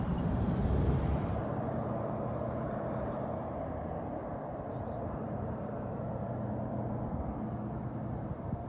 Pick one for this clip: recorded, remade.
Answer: remade